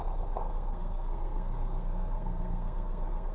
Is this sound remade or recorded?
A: remade